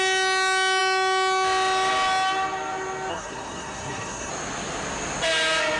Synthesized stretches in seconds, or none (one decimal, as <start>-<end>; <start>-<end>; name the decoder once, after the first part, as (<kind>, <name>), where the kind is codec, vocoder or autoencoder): 3.1-4.3 (codec, SNAC)